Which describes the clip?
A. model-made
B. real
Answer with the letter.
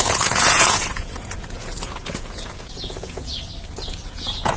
A